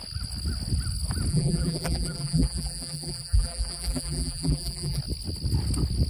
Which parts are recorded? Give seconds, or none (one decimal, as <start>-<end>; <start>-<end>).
0.0-1.3; 5.0-6.1

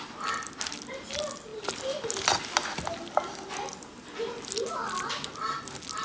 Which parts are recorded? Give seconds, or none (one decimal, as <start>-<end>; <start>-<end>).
0.0-6.0

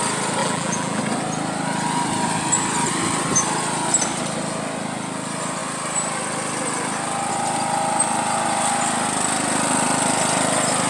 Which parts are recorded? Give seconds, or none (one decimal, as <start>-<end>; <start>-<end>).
0.0-0.4; 1.0-10.9

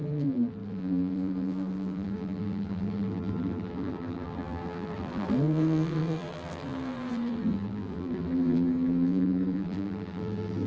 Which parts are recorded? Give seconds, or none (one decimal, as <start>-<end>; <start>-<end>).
none

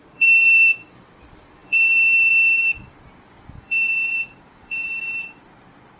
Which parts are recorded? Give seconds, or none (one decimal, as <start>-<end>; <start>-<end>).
none